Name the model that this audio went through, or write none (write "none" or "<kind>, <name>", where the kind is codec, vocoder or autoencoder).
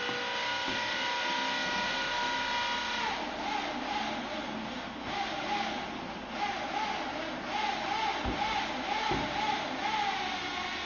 none